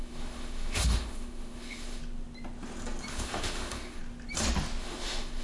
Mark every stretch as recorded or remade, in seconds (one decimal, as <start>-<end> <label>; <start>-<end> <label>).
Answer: 0.0-2.0 remade; 2.0-3.1 recorded; 3.1-4.0 remade; 4.0-4.8 recorded; 4.8-5.4 remade